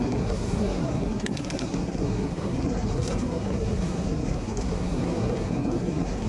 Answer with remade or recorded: remade